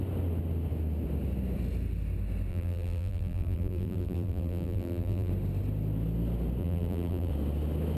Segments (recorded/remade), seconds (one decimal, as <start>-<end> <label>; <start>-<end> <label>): 0.0-2.5 recorded; 2.5-5.3 remade; 5.3-6.6 recorded; 6.6-7.3 remade; 7.3-8.0 recorded